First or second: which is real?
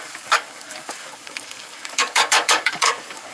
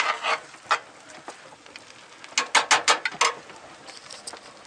second